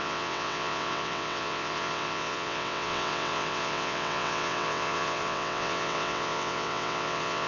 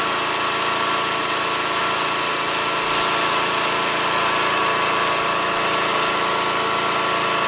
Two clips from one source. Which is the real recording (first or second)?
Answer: second